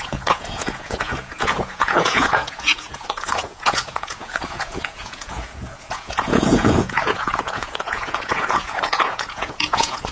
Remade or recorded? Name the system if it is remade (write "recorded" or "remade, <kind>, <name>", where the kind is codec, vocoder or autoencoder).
remade, vocoder, Vocos